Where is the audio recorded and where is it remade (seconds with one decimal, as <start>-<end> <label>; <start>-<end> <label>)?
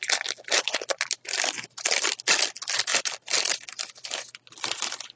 0.0-5.2 recorded